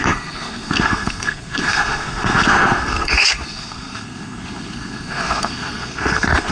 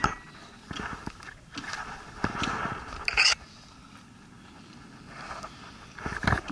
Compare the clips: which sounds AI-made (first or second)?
first